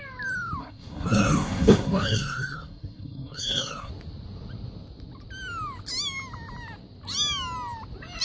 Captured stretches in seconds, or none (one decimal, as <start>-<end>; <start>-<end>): 0.0-0.6; 3.9-8.2